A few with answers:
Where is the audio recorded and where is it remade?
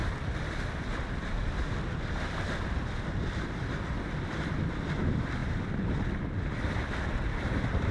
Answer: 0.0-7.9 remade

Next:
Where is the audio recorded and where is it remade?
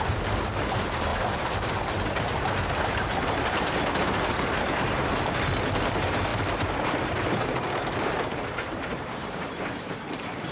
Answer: 0.0-1.1 remade; 1.1-5.7 recorded; 5.7-10.5 remade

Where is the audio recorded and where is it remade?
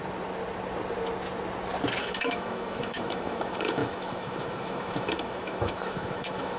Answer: 0.0-2.0 recorded; 2.0-6.6 remade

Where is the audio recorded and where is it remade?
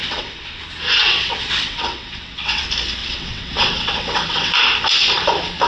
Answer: 0.0-0.6 remade; 0.6-1.0 recorded; 1.0-2.6 remade; 2.6-3.0 recorded; 3.0-4.5 remade; 4.5-5.7 recorded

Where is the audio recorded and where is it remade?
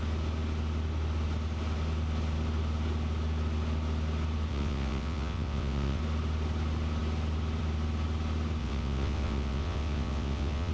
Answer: 0.0-4.5 recorded; 4.5-6.0 remade; 6.0-8.6 recorded; 8.6-10.7 remade